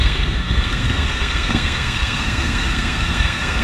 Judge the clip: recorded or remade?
remade